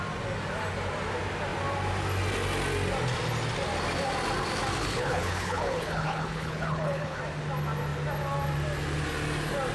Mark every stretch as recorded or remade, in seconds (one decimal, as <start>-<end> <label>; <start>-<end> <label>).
0.0-4.8 recorded; 4.8-7.2 remade; 7.2-9.7 recorded